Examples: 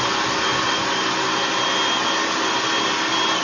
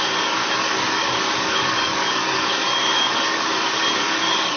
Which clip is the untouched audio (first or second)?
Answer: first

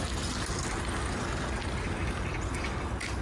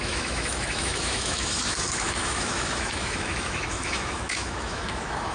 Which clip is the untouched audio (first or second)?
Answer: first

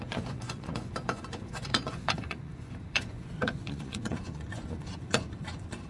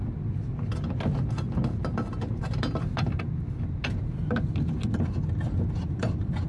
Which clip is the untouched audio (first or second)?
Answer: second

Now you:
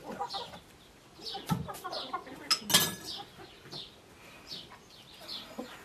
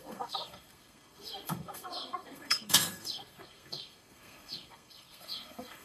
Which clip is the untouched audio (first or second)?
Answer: first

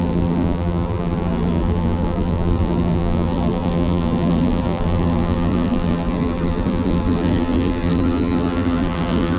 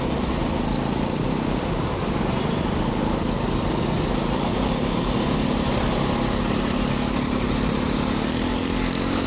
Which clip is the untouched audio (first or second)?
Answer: second